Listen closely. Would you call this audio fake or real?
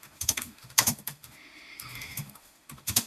fake